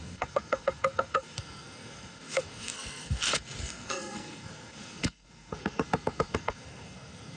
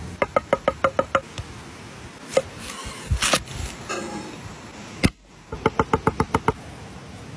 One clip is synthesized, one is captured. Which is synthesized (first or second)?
first